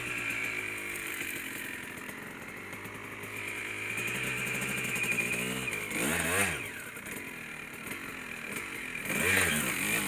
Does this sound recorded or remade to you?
recorded